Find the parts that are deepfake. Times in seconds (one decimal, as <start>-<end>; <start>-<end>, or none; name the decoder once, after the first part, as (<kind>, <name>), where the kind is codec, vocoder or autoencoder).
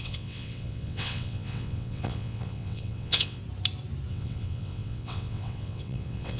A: 0.0-3.4 (vocoder, WaveNeXt); 4.1-6.4